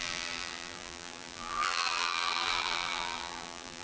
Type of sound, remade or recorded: remade